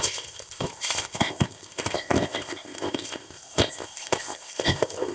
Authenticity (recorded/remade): remade